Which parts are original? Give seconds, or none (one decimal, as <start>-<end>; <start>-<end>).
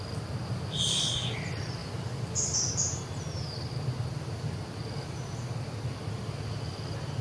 0.0-7.2